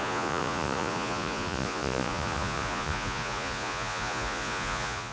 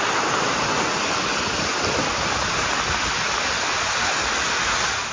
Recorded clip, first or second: second